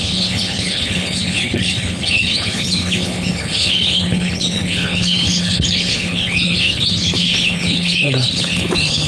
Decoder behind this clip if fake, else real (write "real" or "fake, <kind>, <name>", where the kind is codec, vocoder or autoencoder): fake, codec, HILCodec